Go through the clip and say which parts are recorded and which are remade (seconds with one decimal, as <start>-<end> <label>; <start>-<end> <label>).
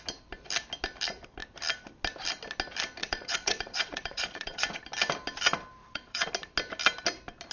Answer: 0.0-3.0 recorded; 3.0-4.8 remade; 4.8-5.8 recorded; 5.8-6.3 remade; 6.3-7.5 recorded